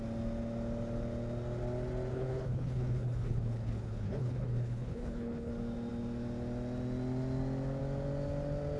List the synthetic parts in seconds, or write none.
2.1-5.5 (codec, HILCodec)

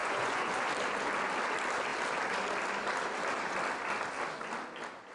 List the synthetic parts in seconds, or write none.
0.0-0.5 (vocoder, Vocos)

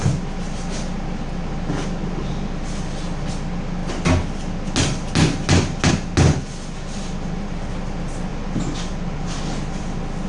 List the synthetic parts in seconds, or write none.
none